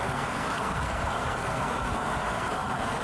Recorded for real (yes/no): no